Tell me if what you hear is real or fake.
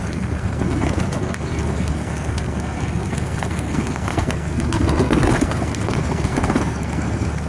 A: fake